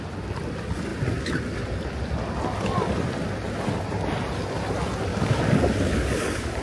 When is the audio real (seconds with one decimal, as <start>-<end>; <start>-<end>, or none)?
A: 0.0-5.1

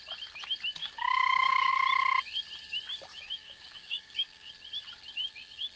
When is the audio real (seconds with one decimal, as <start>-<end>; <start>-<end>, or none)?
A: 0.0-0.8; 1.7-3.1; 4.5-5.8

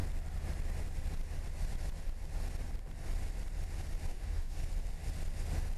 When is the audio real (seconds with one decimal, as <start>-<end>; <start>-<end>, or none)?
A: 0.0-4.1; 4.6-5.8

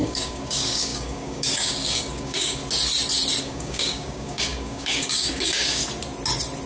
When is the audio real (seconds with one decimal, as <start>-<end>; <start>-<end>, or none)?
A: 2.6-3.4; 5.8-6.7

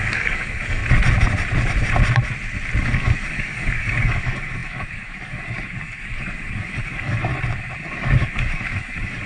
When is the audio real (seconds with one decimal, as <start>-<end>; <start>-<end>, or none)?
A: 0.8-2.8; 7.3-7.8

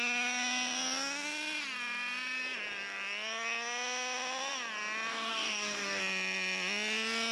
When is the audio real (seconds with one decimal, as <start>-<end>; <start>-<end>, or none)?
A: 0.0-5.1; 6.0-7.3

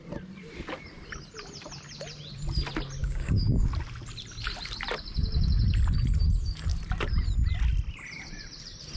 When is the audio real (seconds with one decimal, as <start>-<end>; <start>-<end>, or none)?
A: 0.0-3.0; 3.7-9.0